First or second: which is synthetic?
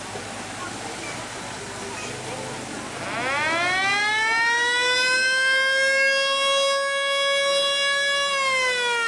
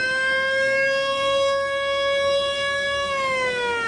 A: second